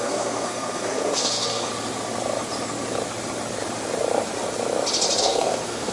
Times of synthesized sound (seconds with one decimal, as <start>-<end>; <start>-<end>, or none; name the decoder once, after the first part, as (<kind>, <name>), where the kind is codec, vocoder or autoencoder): 0.0-1.7 (codec, SNAC); 5.2-5.9